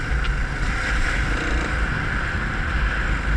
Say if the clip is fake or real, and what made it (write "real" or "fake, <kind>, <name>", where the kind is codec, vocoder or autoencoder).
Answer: real